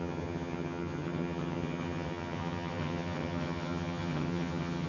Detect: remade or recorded remade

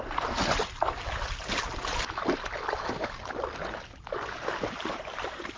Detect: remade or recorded recorded